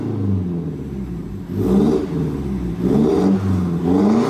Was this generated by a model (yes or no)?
no